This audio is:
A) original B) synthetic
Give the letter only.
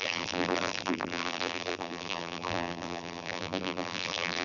B